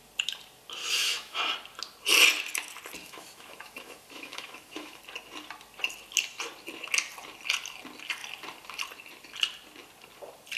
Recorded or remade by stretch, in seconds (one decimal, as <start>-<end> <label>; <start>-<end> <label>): 0.0-0.8 recorded; 0.8-1.4 remade; 1.4-3.0 recorded; 3.0-5.0 remade; 5.0-10.6 recorded